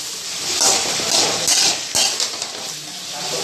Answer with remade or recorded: recorded